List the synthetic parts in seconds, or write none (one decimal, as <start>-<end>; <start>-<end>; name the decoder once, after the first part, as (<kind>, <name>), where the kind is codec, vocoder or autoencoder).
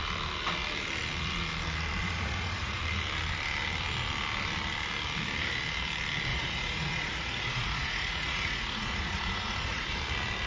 2.0-2.8 (vocoder, Vocos); 6.3-10.0